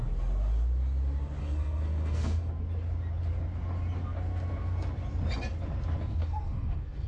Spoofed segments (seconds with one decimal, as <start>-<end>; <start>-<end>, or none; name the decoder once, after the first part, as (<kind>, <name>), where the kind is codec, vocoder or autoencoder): 1.4-2.5 (codec, SNAC); 6.2-7.1